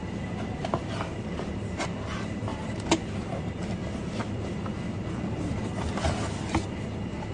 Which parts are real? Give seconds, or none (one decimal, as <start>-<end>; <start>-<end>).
0.0-7.3